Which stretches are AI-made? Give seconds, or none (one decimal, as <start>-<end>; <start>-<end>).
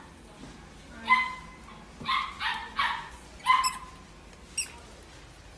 2.6-3.4